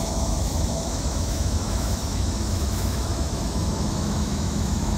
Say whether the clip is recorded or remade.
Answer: remade